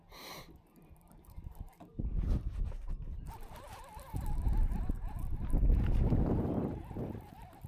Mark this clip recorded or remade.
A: remade